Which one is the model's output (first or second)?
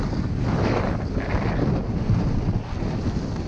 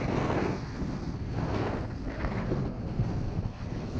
second